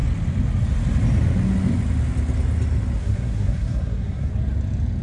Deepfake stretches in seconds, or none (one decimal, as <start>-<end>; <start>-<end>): 3.0-4.3